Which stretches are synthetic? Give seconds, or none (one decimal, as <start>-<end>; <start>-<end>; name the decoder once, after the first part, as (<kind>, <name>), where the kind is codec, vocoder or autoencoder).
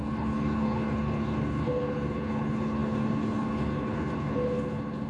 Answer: 0.0-5.1 (codec, HILCodec)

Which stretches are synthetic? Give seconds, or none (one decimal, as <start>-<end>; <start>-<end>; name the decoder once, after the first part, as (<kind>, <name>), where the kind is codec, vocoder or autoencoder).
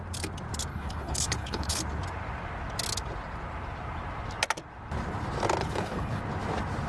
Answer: 0.7-1.8 (codec, HILCodec); 5.6-6.2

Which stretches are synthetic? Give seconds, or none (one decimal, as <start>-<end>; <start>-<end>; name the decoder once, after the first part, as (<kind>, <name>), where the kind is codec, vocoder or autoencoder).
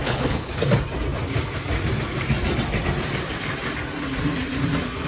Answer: 0.0-0.5 (codec, HILCodec)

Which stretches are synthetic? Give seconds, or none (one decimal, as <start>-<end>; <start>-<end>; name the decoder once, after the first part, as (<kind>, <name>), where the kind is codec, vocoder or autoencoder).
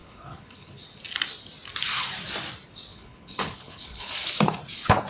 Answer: 0.0-0.8 (codec, HILCodec); 2.9-4.1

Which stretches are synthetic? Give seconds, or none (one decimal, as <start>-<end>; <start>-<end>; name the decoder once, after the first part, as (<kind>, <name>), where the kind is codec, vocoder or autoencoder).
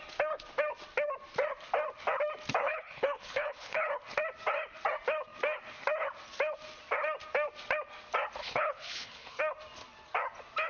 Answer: 2.6-3.9 (codec, HILCodec); 8.4-9.4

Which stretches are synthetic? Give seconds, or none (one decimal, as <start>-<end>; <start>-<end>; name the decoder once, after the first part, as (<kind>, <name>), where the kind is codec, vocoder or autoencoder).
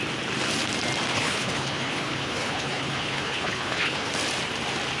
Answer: 1.1-4.1 (codec, HILCodec)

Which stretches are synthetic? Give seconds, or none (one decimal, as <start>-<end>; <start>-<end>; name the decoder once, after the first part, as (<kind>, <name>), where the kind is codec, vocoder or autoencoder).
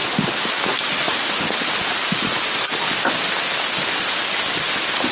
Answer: none